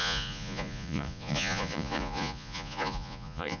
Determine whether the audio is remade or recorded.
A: remade